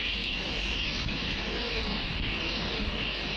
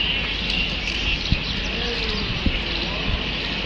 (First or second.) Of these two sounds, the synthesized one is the first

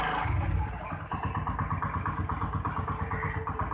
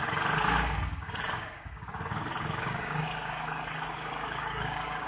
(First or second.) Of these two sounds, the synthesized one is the second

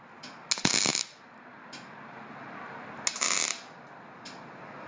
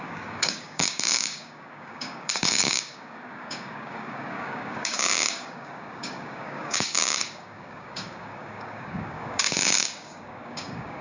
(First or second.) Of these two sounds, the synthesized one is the second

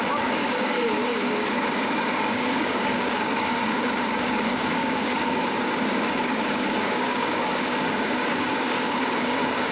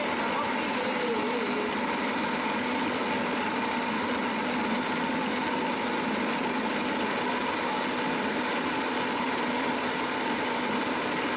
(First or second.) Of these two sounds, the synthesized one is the first